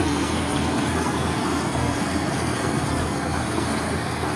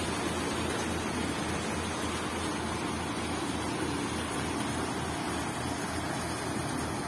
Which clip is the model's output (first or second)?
first